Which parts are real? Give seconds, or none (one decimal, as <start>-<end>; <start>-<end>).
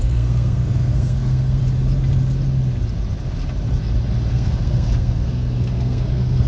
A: 1.6-4.3